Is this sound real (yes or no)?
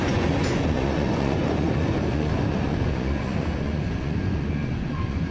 no